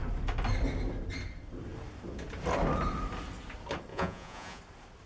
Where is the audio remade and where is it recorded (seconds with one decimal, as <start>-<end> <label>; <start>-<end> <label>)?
0.0-3.9 recorded; 3.9-4.6 remade; 4.6-5.1 recorded